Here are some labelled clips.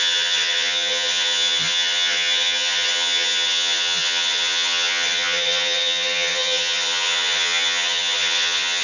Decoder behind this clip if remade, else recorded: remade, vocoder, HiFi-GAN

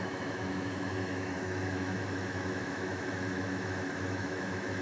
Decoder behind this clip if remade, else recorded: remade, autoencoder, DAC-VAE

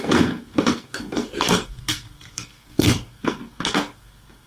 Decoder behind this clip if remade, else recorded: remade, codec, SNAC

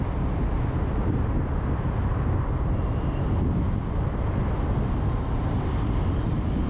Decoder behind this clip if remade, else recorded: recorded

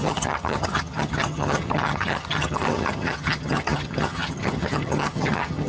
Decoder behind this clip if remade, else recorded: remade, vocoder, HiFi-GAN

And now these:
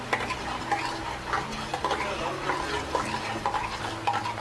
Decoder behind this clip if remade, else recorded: recorded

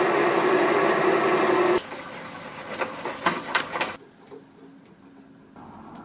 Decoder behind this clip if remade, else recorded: recorded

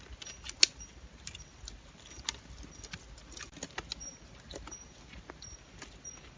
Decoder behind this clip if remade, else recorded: recorded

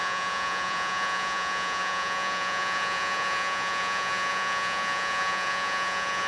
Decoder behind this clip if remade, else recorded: remade, vocoder, Vocos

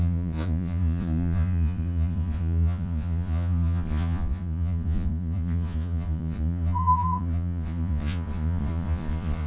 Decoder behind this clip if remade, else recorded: remade, vocoder, Vocos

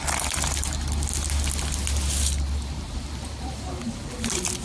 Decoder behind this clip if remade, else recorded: recorded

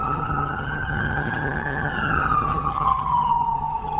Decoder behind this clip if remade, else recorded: remade, vocoder, HiFi-GAN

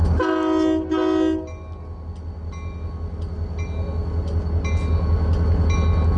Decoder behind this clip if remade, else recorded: recorded